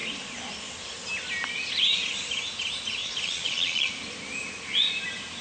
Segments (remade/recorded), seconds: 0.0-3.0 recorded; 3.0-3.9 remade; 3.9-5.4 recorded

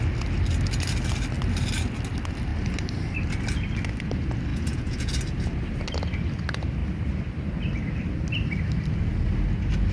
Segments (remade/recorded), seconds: 0.0-4.5 recorded; 4.5-5.1 remade; 5.1-9.9 recorded